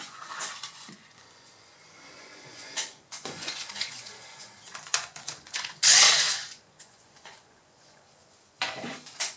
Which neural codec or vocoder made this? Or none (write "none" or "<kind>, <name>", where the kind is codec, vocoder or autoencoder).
vocoder, Vocos